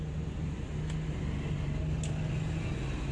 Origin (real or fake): real